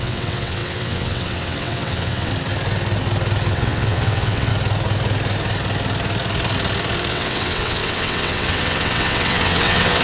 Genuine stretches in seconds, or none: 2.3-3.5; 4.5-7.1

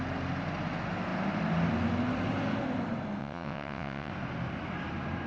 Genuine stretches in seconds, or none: 0.0-3.2; 4.1-5.3

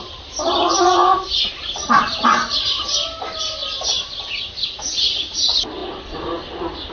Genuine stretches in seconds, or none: 0.0-6.9

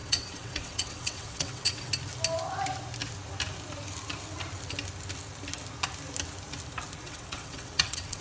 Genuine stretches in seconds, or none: 1.9-7.0

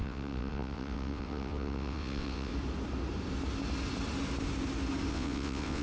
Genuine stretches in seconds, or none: 2.5-5.1